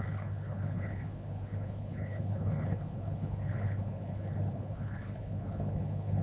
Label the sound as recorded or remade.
remade